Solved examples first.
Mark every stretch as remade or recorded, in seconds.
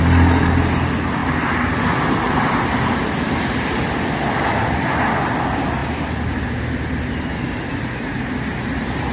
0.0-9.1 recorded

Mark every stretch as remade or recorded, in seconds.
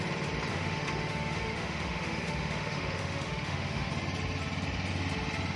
0.0-0.5 recorded; 0.5-3.9 remade; 3.9-5.6 recorded